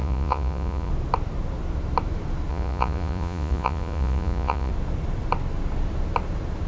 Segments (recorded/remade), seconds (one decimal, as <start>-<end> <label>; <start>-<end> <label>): 0.0-0.9 remade; 0.9-2.5 recorded; 2.5-4.7 remade; 4.7-6.7 recorded